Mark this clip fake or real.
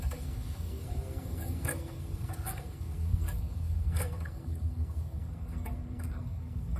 fake